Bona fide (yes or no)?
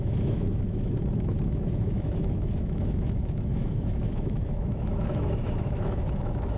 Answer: no